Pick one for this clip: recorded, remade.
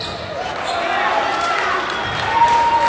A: recorded